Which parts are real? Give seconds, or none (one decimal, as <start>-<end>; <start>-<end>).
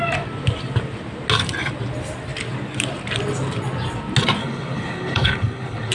0.0-4.4